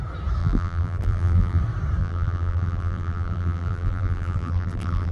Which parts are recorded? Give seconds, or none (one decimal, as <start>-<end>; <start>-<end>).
0.0-0.4; 1.6-2.0